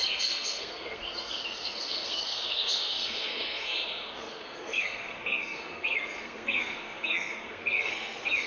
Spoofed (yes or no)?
yes